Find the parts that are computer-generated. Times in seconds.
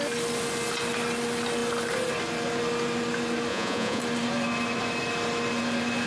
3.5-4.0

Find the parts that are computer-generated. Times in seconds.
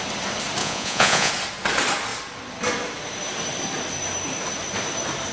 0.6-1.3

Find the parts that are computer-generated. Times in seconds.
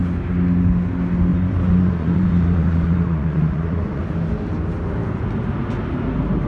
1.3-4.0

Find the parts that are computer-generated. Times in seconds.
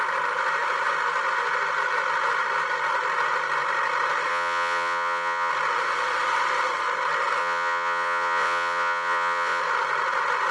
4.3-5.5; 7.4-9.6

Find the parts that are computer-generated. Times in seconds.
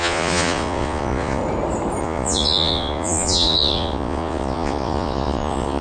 0.0-1.4; 2.0-5.8